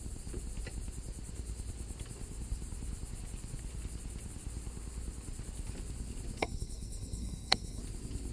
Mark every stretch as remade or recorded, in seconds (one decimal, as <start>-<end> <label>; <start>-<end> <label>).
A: 0.0-6.4 recorded; 6.4-7.8 remade; 7.8-8.3 recorded